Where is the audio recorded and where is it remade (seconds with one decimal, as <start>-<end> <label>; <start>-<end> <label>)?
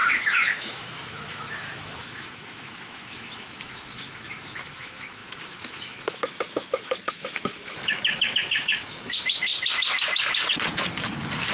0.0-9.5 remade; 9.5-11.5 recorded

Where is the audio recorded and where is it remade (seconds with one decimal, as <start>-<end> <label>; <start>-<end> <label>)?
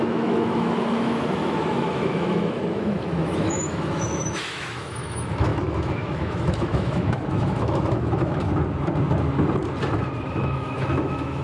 0.0-8.5 remade; 8.5-10.2 recorded; 10.2-11.4 remade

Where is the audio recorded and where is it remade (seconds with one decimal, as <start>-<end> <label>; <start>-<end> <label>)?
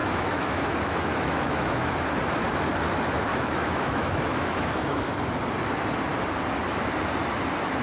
0.0-1.9 remade; 1.9-3.3 recorded; 3.3-5.1 remade; 5.1-7.8 recorded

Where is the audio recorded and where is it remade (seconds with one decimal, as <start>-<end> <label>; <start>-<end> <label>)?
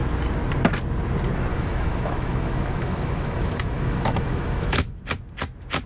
0.0-1.5 recorded; 1.5-5.0 remade; 5.0-5.9 recorded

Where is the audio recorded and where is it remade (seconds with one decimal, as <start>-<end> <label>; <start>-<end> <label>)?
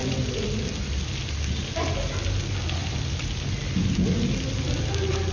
0.0-5.3 recorded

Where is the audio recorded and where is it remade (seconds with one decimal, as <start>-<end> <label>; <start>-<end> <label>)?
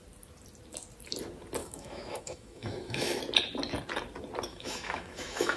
0.0-1.6 recorded; 1.6-3.2 remade; 3.2-4.5 recorded; 4.5-5.6 remade